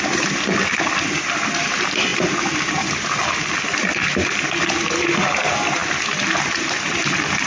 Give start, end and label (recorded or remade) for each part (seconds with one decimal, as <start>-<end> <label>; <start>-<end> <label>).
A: 0.0-7.5 recorded